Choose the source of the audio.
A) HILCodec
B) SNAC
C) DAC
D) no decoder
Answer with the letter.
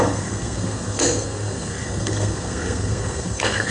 B